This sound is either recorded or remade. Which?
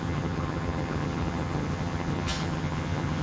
remade